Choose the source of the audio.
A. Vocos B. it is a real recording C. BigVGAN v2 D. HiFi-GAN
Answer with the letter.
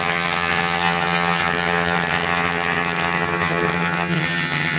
D